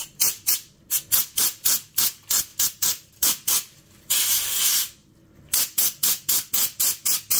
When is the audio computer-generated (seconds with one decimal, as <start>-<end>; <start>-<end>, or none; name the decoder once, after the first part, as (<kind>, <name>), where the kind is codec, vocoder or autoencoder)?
2.5-3.3 (vocoder, BigVGAN v2)